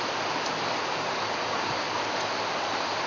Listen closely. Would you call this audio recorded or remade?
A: recorded